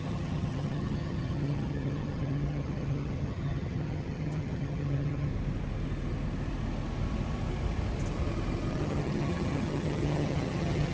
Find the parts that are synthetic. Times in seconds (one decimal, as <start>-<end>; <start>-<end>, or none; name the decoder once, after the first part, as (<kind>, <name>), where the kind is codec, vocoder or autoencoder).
0.0-5.3 (vocoder, HiFi-GAN); 8.7-10.9